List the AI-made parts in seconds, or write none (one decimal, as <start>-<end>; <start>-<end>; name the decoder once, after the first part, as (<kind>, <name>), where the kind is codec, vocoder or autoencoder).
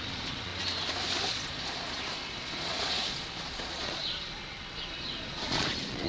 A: 0.0-0.5 (vocoder, Vocos); 1.3-6.1